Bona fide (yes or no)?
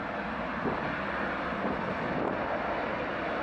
yes